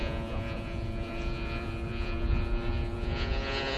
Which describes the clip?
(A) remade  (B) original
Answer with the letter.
A